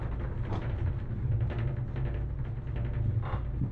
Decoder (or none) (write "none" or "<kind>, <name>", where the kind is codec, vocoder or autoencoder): none